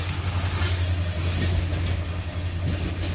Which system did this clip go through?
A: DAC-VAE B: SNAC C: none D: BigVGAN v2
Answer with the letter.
C